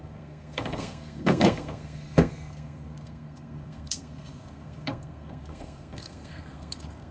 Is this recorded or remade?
remade